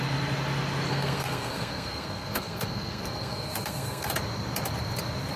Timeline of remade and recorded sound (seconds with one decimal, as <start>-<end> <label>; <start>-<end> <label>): 0.0-0.9 recorded; 0.9-4.1 remade; 4.1-5.4 recorded